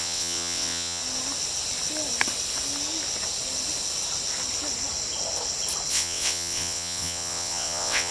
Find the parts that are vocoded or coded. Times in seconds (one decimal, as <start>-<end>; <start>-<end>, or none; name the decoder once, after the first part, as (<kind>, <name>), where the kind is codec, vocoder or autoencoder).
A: 0.0-1.0 (vocoder, WaveNeXt); 5.9-8.1